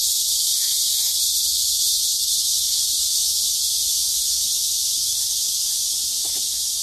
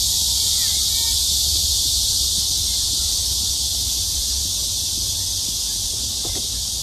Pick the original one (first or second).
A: second